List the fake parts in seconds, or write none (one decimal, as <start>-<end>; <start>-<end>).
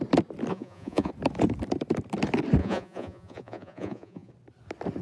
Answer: 0.5-1.1; 2.6-4.3